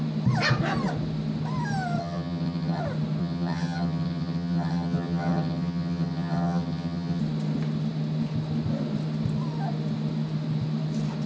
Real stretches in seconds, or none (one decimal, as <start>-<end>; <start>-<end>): 0.0-2.0; 2.8-3.2; 7.2-11.3